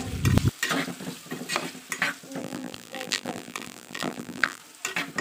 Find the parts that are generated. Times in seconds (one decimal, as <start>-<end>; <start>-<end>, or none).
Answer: 2.4-4.6